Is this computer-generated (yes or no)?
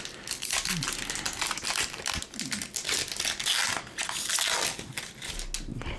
no